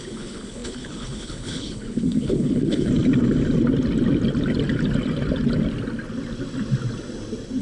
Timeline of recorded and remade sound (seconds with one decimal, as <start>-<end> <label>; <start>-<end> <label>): 0.0-2.9 remade; 2.9-7.6 recorded